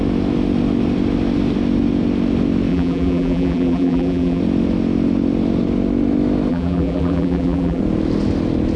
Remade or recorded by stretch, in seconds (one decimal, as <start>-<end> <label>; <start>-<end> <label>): 0.0-2.7 recorded; 2.7-4.4 remade; 4.4-6.5 recorded; 6.5-7.8 remade; 7.8-8.8 recorded